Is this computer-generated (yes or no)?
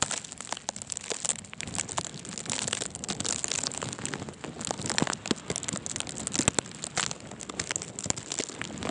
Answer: no